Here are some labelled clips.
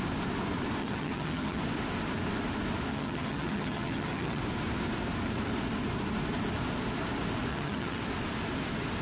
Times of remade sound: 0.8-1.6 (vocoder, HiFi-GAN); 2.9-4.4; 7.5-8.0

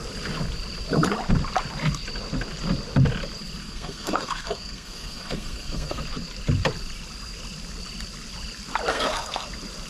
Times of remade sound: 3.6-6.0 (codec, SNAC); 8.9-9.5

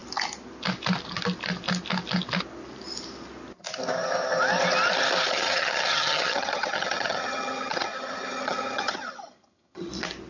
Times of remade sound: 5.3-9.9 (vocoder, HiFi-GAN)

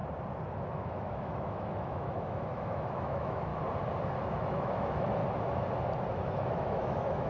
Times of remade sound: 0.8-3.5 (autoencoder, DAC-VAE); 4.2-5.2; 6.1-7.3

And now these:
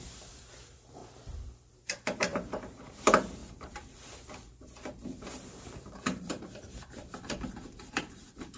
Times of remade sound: 0.0-1.0 (vocoder, BigVGAN v2); 1.8-8.6

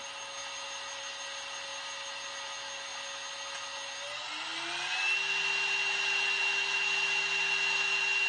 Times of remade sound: none

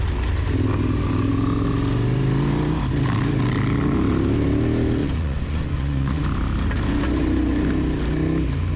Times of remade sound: 5.0-6.2 (vocoder, Vocos)

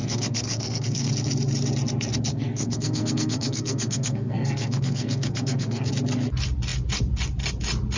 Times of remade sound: 0.0-1.1 (codec, SNAC); 2.3-5.9